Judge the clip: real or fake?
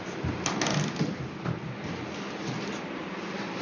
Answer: real